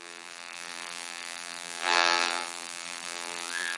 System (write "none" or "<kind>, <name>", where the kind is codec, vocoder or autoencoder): vocoder, BigVGAN v2